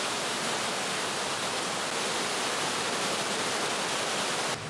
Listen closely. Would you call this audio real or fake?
fake